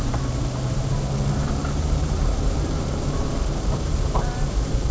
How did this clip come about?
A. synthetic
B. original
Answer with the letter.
A